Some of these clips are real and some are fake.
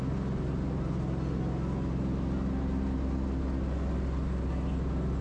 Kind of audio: real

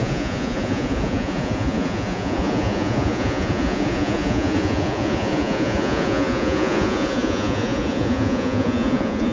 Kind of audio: fake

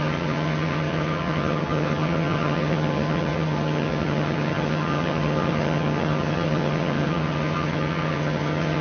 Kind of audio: fake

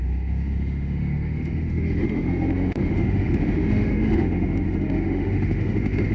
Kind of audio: fake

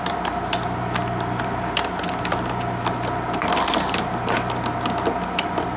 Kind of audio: real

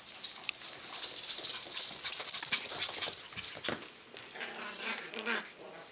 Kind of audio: real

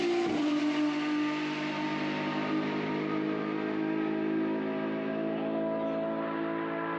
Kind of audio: real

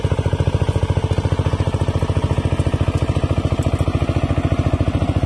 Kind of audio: real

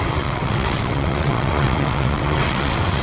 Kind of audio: fake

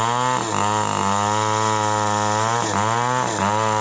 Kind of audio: real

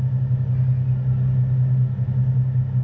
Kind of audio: real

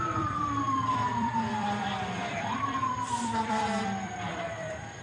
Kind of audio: fake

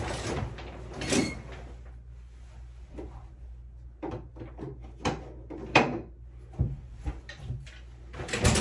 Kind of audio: real